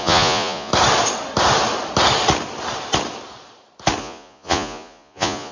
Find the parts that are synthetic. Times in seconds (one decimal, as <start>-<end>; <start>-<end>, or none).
0.0-0.7; 4.0-5.5